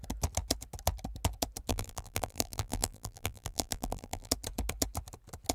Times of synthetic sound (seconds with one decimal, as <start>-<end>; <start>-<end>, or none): 1.7-4.3